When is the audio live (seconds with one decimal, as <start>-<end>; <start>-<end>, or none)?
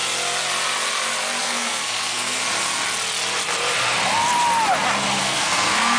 0.0-1.4; 2.4-5.2